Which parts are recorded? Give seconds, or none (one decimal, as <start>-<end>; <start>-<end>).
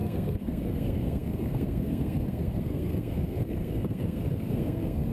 none